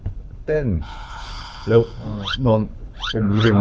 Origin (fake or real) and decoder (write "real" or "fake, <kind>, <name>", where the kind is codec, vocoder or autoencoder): fake, codec, HILCodec